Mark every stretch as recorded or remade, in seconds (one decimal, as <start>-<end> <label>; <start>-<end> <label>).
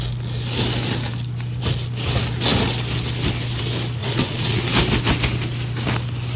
0.0-4.0 recorded; 4.0-4.6 remade; 4.6-6.4 recorded